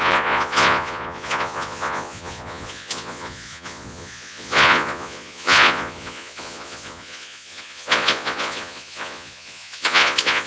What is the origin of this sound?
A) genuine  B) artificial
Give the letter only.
B